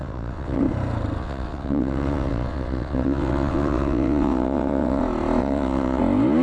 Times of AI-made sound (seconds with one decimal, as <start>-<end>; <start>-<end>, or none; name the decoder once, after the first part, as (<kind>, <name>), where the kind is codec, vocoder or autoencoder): 0.0-0.6 (vocoder, WaveNeXt); 1.2-5.0; 5.4-6.0